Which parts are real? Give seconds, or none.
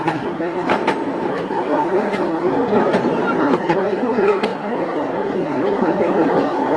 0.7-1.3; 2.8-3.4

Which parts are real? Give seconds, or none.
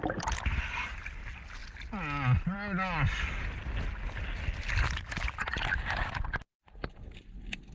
0.0-7.7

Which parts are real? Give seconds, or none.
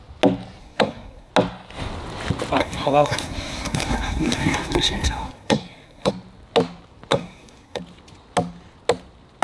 0.0-0.6; 1.3-2.6; 6.1-7.1; 7.8-9.4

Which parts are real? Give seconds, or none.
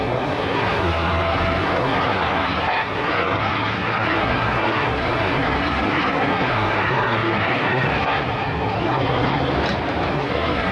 9.5-10.1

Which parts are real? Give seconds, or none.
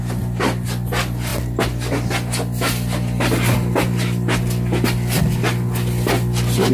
0.0-6.7